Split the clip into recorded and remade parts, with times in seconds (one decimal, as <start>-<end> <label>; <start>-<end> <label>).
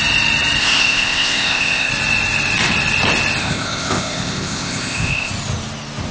0.0-0.6 recorded; 0.6-1.9 remade; 1.9-3.4 recorded; 3.4-5.3 remade; 5.3-6.1 recorded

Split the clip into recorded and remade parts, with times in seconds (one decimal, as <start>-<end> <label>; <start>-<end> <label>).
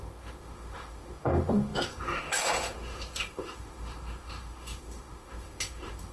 0.0-6.1 remade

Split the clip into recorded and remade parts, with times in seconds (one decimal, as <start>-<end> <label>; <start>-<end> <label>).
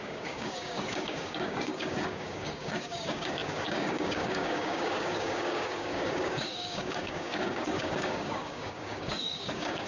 0.0-9.9 remade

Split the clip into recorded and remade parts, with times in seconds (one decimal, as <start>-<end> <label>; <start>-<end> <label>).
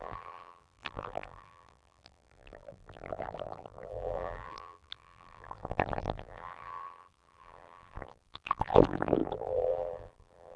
0.0-10.6 remade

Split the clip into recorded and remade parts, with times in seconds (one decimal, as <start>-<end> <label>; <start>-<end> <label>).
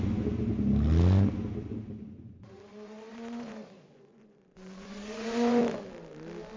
0.0-1.7 recorded; 1.7-5.6 remade; 5.6-6.6 recorded